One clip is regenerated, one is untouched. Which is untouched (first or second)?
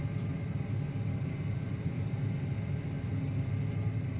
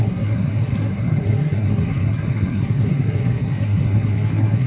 first